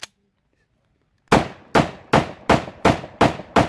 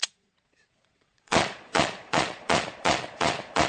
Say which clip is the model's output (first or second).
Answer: second